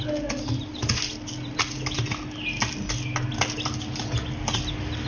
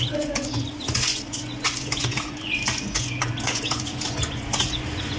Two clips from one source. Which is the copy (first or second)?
second